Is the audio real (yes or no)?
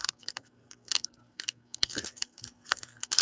no